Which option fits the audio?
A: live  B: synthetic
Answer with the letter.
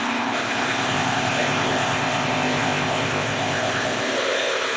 B